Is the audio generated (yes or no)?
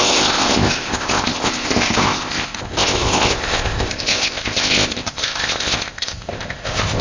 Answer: yes